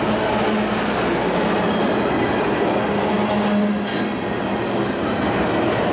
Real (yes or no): yes